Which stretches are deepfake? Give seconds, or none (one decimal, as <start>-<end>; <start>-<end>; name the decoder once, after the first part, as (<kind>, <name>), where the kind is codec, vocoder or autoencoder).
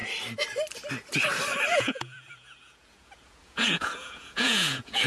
1.7-5.1 (vocoder, Vocos)